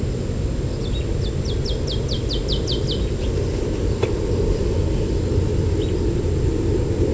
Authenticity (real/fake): real